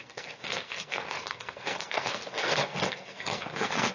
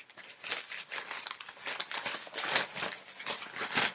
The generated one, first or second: first